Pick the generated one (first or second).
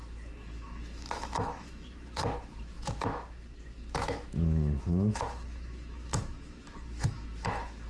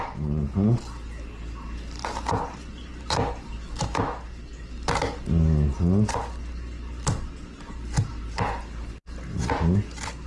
first